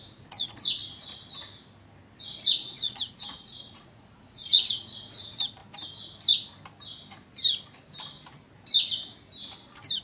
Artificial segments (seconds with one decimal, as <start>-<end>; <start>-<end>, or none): 0.0-0.8; 2.2-5.6